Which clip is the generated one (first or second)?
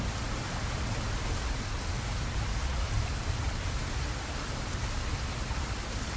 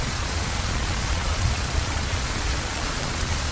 second